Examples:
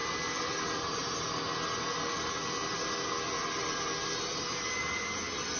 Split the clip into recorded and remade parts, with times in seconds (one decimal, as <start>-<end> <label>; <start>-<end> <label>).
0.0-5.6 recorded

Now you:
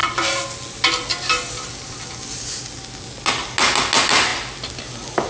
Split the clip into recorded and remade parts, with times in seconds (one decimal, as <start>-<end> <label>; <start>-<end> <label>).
0.0-5.3 recorded

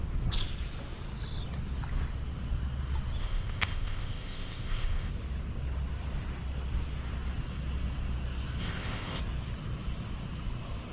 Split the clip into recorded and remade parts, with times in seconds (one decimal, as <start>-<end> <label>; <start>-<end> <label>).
0.0-3.2 recorded; 3.2-5.1 remade; 5.1-8.6 recorded; 8.6-9.2 remade; 9.2-10.9 recorded

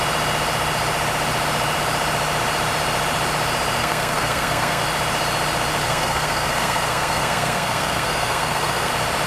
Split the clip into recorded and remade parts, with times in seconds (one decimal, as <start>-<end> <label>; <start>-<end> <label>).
0.0-3.8 recorded; 3.8-4.8 remade; 4.8-5.8 recorded; 5.8-8.9 remade; 8.9-9.3 recorded

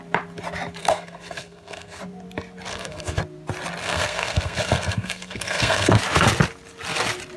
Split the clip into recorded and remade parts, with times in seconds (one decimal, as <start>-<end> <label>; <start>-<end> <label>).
0.0-0.8 recorded; 0.8-2.0 remade; 2.0-2.7 recorded; 2.7-3.2 remade; 3.2-3.8 recorded; 3.8-6.0 remade; 6.0-7.4 recorded